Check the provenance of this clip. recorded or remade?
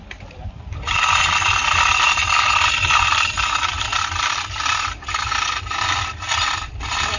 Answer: recorded